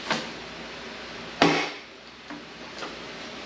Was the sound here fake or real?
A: real